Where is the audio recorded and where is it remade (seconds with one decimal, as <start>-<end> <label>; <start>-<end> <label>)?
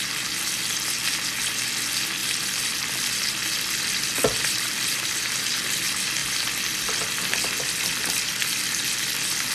0.0-2.2 recorded; 2.2-5.2 remade; 5.2-9.5 recorded